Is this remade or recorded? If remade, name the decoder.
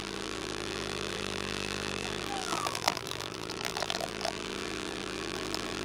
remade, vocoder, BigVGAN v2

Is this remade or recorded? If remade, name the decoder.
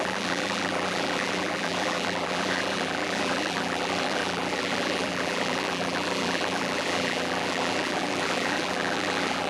remade, vocoder, BigVGAN v2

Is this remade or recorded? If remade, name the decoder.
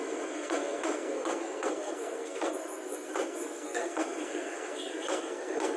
remade, codec, SNAC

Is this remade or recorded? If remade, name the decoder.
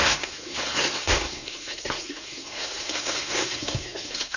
remade, codec, SNAC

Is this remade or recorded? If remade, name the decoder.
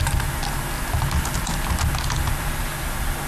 recorded